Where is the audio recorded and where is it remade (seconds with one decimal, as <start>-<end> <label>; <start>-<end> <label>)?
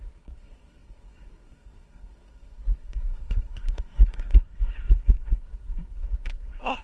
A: 0.0-6.8 remade